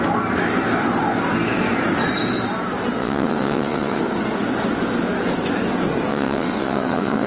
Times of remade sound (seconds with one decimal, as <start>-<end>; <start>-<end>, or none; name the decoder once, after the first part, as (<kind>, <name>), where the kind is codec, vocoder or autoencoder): 3.0-4.0 (vocoder, WaveNeXt); 6.1-7.3